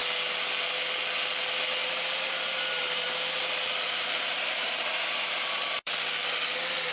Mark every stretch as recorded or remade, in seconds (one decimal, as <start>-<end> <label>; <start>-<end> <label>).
0.0-1.8 recorded; 1.8-5.9 remade; 5.9-6.9 recorded